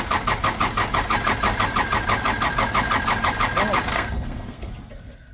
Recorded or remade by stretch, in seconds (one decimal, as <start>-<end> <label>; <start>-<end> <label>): 0.0-3.9 recorded; 3.9-4.7 remade; 4.7-5.3 recorded